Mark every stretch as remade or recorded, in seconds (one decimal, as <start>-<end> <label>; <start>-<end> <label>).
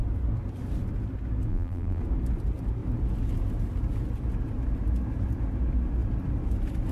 0.0-1.5 recorded; 1.5-2.0 remade; 2.0-6.9 recorded